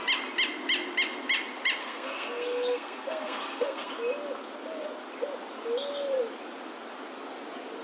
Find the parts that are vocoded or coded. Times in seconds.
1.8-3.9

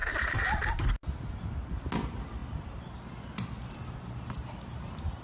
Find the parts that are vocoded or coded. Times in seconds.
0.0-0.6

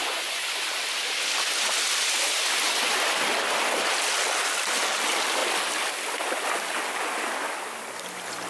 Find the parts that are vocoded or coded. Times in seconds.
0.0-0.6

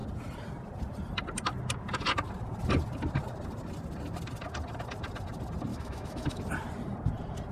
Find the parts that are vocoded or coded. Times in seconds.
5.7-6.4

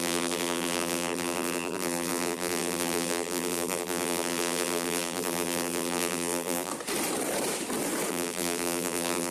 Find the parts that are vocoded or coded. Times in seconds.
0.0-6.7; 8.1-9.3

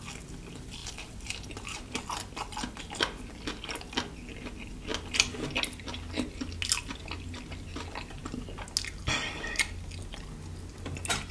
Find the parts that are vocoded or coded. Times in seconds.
none

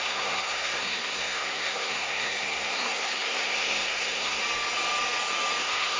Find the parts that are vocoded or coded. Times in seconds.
0.0-4.4; 5.6-6.0